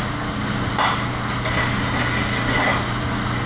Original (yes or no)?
yes